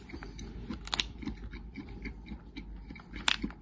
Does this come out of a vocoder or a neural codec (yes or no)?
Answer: no